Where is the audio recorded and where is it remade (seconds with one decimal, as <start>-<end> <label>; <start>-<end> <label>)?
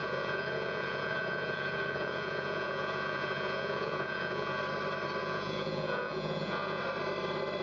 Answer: 0.0-4.6 remade; 4.6-5.2 recorded; 5.2-6.8 remade; 6.8-7.6 recorded